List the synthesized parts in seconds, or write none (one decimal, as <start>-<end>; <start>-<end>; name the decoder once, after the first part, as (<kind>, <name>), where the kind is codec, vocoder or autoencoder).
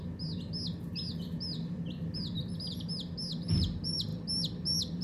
none